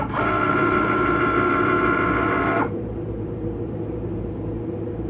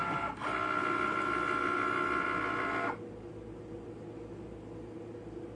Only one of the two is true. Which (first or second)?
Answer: second